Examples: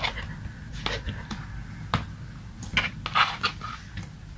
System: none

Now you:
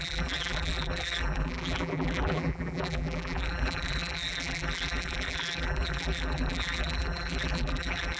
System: vocoder, BigVGAN v2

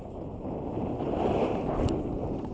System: none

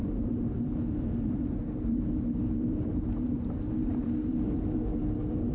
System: vocoder, BigVGAN v2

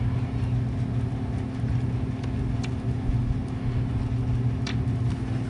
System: none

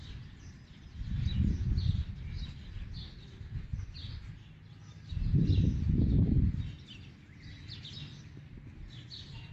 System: none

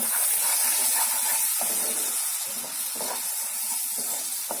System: none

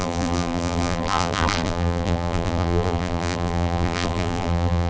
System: vocoder, BigVGAN v2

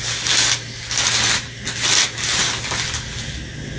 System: none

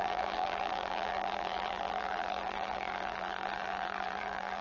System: vocoder, BigVGAN v2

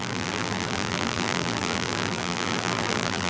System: vocoder, BigVGAN v2